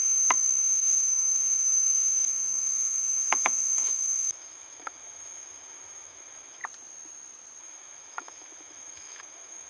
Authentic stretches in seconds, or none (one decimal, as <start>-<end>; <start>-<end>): 6.6-7.6